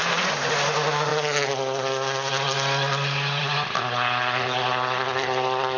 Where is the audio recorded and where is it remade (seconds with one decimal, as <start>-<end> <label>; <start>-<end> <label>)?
0.0-5.8 recorded